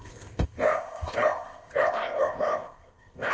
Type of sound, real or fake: fake